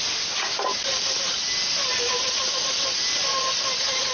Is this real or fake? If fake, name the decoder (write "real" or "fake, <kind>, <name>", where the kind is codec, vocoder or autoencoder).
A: real